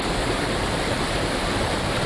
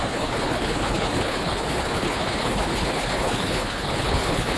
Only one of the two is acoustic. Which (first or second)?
first